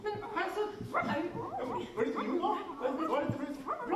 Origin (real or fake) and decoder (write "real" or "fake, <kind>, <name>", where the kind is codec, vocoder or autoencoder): real